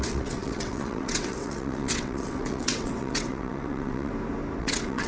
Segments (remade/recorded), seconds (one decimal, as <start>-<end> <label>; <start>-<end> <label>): 0.0-4.1 remade; 4.1-4.6 recorded; 4.6-5.1 remade